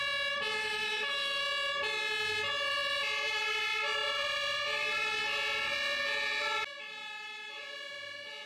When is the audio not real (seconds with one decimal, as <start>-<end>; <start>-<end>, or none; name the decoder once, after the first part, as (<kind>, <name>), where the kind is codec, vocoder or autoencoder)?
0.6-1.4 (autoencoder, DAC-VAE)